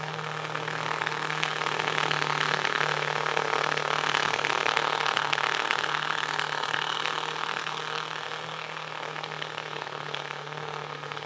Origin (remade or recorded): remade